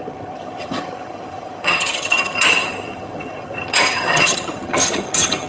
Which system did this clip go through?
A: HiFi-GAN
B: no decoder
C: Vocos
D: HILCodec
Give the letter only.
A